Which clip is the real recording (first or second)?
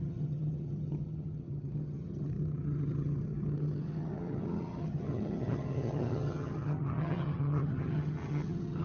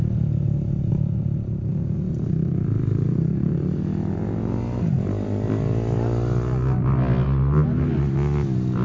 second